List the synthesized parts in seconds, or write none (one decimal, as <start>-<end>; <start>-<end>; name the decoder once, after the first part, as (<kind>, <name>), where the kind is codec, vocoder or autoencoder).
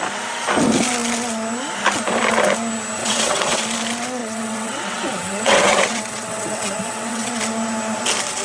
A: 3.0-3.6 (vocoder, WaveNeXt); 4.2-7.4